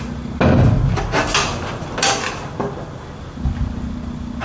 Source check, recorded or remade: recorded